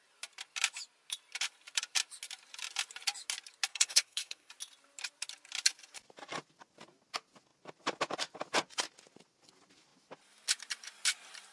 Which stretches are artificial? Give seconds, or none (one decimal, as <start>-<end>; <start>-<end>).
3.7-4.5